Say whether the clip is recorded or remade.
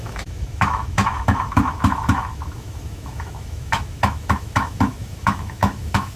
remade